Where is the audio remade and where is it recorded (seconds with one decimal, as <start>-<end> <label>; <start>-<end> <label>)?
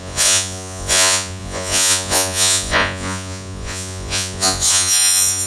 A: 0.0-5.5 remade